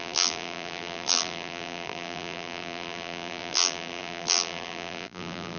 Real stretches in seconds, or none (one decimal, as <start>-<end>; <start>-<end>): none